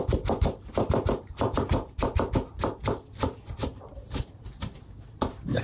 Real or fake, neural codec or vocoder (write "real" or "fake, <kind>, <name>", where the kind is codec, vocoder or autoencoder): real